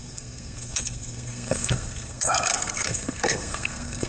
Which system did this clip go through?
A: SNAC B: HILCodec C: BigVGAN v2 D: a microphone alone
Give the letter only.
A